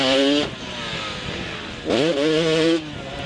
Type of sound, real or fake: real